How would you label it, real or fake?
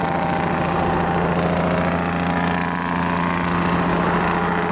real